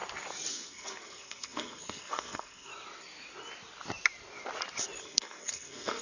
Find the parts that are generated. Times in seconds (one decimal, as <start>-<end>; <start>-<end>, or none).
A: 0.5-2.7; 5.0-6.0